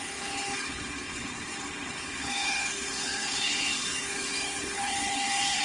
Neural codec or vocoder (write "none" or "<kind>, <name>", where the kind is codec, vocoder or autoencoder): codec, HILCodec